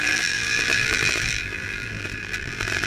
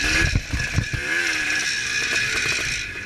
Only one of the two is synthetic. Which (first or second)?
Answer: first